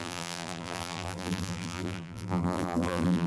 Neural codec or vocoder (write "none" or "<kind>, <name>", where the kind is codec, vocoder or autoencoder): vocoder, BigVGAN v2